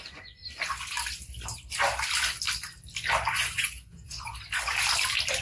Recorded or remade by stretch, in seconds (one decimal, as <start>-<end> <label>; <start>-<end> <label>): 0.0-0.4 remade; 0.4-3.3 recorded; 3.3-4.3 remade; 4.3-5.4 recorded